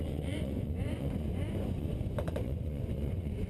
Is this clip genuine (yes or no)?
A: no